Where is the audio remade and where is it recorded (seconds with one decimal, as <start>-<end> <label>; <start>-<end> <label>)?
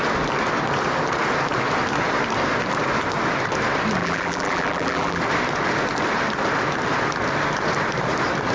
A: 0.0-4.0 recorded; 4.0-5.2 remade; 5.2-8.5 recorded